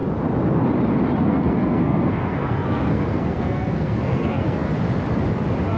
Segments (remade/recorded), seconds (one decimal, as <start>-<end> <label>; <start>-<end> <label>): 0.0-1.2 recorded; 1.2-4.7 remade; 4.7-5.8 recorded